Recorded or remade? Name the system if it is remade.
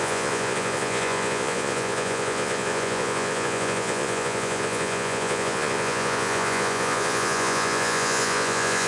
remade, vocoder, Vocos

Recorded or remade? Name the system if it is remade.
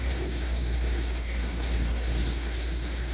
remade, codec, SNAC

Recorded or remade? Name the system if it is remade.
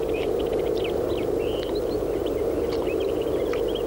remade, vocoder, BigVGAN v2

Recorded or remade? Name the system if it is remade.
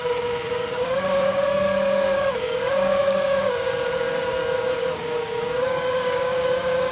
remade, codec, DAC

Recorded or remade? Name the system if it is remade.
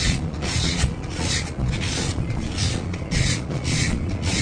remade, vocoder, Vocos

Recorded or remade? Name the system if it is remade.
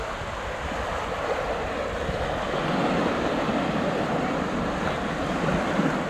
recorded